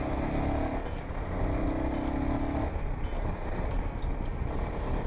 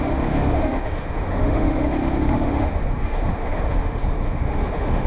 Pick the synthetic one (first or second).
second